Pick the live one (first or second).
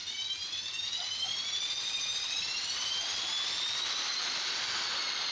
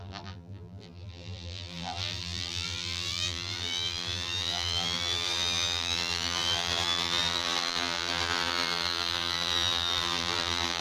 first